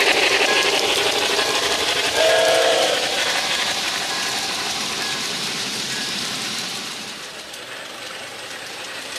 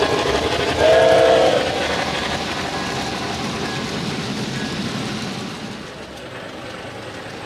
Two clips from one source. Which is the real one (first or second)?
second